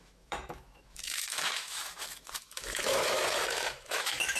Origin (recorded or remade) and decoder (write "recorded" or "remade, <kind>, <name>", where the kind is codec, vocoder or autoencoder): remade, autoencoder, DAC-VAE